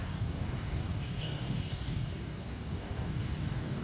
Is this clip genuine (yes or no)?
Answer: no